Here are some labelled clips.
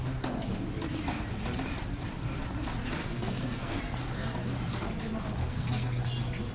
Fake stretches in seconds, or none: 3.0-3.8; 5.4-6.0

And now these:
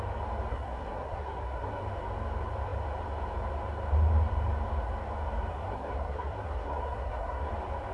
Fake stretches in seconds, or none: 0.5-1.8; 5.5-7.5

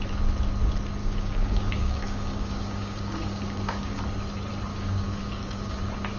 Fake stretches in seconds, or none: 1.0-4.0; 4.7-5.8

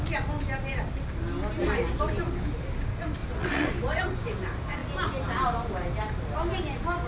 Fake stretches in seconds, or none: 3.2-3.7

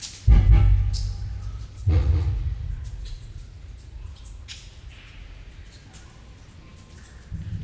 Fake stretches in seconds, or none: 1.8-5.7

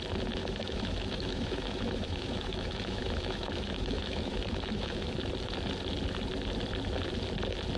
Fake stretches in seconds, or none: 0.4-5.1

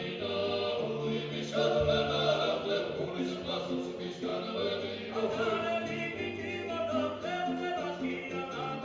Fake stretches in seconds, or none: none

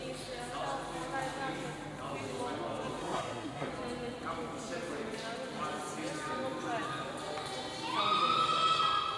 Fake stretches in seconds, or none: 3.0-3.7